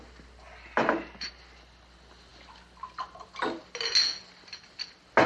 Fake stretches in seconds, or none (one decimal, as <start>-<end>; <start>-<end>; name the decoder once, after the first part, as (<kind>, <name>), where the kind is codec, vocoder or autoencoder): none